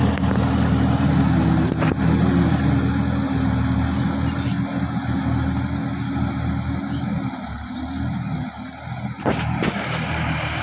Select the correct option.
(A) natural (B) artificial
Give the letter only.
A